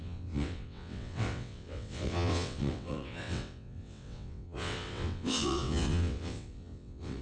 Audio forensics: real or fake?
fake